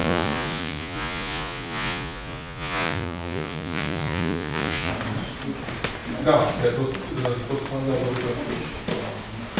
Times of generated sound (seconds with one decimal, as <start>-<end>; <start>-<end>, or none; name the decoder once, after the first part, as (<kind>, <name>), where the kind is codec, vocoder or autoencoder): 0.0-4.9 (vocoder, Vocos)